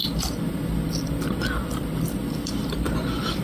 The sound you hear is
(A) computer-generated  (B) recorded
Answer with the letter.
B